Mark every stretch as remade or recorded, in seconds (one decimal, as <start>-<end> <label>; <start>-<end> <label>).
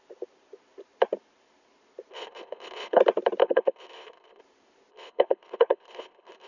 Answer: 0.0-2.1 recorded; 2.1-3.0 remade; 3.0-3.4 recorded; 3.4-4.4 remade; 4.4-4.9 recorded; 4.9-6.5 remade